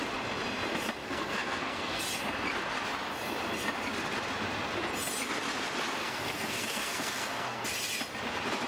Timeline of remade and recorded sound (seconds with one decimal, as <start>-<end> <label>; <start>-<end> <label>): 0.0-1.0 recorded; 1.0-2.0 remade; 2.0-6.0 recorded; 6.0-7.6 remade; 7.6-8.7 recorded